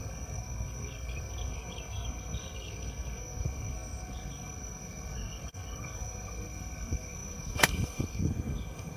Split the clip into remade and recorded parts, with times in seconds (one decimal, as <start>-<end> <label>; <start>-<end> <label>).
0.0-9.0 remade